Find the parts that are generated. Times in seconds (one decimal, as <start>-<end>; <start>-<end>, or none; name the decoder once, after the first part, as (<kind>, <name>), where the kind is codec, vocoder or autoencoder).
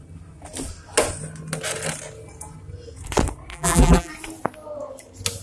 3.5-4.1 (vocoder, BigVGAN v2)